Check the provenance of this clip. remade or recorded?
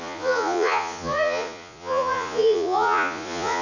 remade